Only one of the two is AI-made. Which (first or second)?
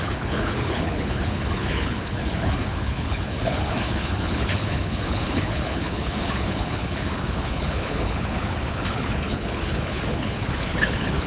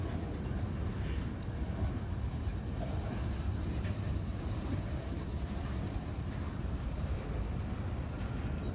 first